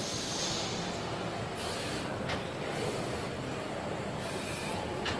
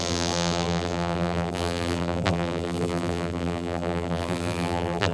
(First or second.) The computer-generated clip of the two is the second